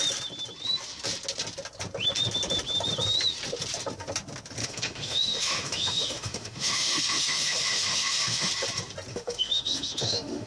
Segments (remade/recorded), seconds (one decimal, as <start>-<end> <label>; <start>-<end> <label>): 0.0-4.6 recorded; 4.6-8.5 remade; 8.5-9.1 recorded; 9.1-10.5 remade